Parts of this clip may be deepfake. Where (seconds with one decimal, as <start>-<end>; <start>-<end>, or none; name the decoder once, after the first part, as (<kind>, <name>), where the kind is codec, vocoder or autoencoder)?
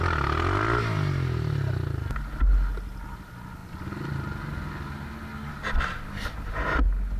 none